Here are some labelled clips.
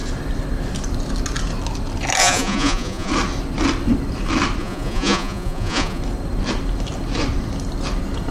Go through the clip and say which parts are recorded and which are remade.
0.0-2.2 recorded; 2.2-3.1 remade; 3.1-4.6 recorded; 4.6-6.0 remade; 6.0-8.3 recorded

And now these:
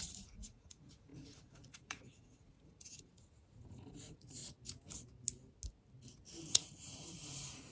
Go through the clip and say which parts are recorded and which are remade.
0.0-4.4 remade; 4.4-6.5 recorded; 6.5-7.7 remade

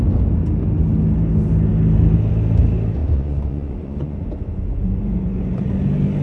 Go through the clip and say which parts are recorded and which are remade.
0.0-3.0 recorded; 3.0-5.7 remade; 5.7-6.2 recorded

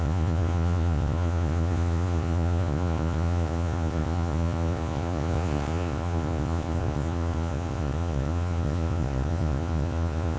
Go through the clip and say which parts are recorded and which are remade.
0.0-10.4 remade